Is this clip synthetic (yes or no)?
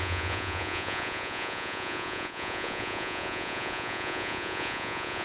yes